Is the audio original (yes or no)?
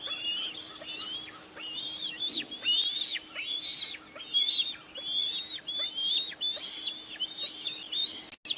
yes